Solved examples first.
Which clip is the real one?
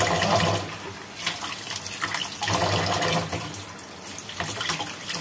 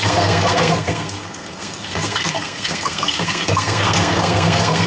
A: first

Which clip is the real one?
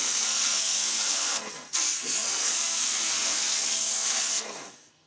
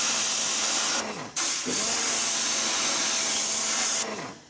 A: second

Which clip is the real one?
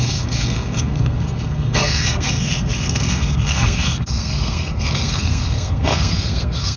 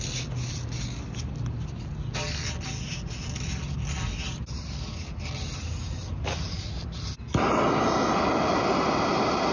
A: second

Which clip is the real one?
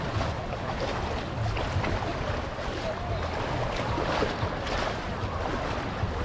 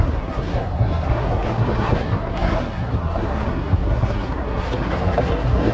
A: first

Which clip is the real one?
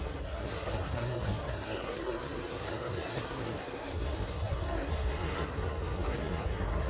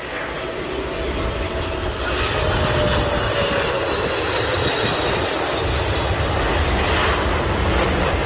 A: second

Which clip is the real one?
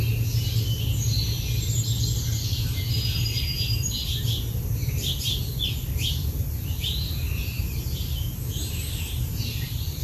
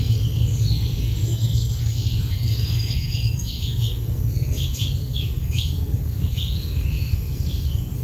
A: first